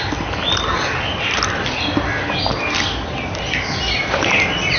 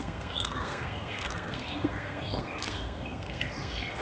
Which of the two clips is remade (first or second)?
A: second